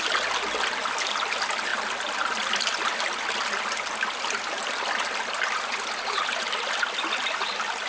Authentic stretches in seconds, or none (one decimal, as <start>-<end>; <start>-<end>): 0.0-7.9